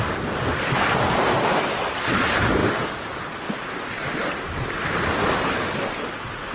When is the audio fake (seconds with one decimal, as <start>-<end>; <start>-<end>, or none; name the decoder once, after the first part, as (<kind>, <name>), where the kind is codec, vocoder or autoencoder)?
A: none